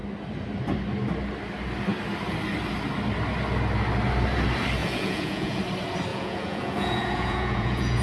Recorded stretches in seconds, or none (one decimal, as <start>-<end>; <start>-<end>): 0.0-4.8; 5.6-6.1

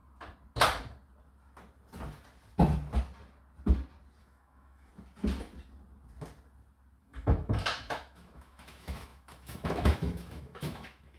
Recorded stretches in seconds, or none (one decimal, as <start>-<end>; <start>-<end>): 0.0-4.2; 4.9-7.0

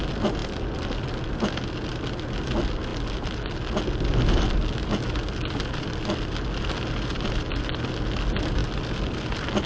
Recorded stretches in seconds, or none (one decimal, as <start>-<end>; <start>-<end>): 0.0-9.7

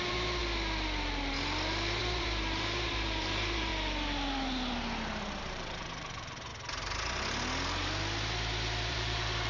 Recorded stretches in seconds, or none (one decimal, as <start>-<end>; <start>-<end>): 0.4-2.0; 3.7-5.4; 6.5-8.9

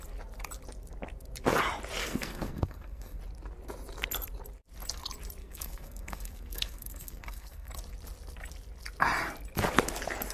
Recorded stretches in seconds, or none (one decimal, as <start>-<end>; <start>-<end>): 0.0-2.0; 3.2-5.4; 7.7-10.3

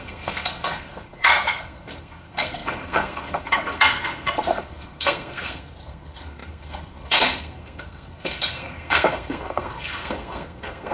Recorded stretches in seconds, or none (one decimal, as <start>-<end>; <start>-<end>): none

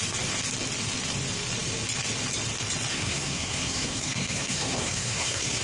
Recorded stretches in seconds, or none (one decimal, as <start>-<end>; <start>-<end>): 0.0-2.9

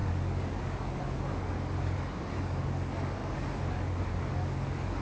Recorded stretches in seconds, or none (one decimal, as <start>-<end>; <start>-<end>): none